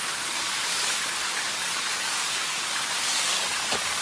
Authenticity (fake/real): fake